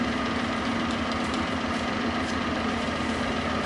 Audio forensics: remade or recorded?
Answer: remade